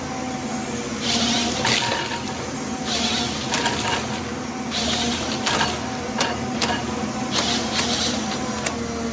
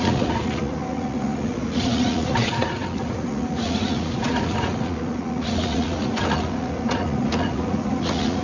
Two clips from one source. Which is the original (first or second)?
first